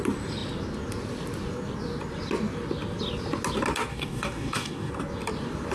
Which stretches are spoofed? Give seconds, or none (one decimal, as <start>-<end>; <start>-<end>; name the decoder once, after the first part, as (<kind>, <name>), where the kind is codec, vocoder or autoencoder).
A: 3.9-4.9 (codec, DAC)